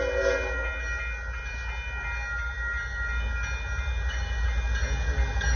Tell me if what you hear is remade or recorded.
recorded